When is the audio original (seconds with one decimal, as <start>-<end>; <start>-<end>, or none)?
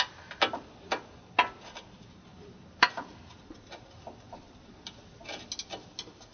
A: 0.0-2.3; 4.7-6.3